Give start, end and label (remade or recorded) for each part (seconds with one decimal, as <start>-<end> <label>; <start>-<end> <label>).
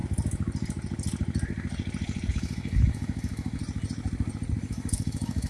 0.0-2.3 recorded; 2.3-3.6 remade; 3.6-4.6 recorded; 4.6-5.5 remade